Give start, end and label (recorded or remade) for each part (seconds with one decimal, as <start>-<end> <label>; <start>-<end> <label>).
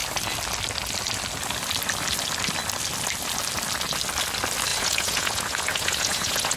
0.0-4.7 recorded; 4.7-6.6 remade